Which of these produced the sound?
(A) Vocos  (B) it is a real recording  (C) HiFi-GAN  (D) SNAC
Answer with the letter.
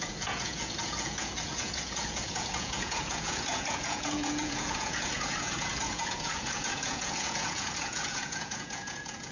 A